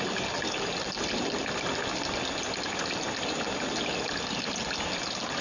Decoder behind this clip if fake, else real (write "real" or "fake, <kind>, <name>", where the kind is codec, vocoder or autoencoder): real